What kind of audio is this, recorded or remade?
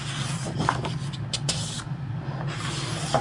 recorded